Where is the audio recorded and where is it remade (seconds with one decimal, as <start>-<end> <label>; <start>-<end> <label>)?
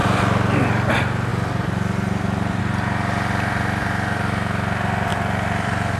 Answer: 0.0-1.3 recorded; 1.3-2.6 remade; 2.6-5.1 recorded; 5.1-6.0 remade